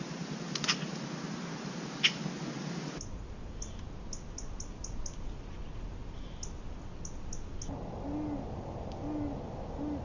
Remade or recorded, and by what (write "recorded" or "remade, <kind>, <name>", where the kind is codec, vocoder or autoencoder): recorded